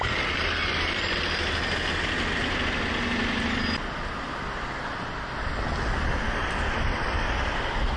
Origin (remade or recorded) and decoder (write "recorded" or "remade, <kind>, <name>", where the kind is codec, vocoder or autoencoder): recorded